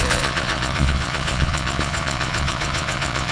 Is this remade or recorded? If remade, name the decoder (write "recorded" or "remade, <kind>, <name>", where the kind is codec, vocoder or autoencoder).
remade, vocoder, Vocos